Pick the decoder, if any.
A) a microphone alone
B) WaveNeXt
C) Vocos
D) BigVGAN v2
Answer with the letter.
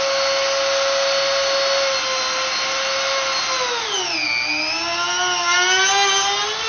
A